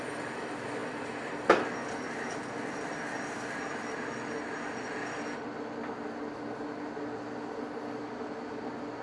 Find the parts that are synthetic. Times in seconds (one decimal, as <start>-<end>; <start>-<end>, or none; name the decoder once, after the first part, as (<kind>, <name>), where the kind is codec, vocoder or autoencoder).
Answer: none